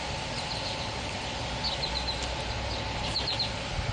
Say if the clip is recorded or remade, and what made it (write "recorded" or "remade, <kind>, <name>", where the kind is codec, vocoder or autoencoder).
recorded